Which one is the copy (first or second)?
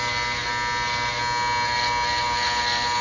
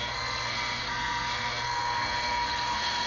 second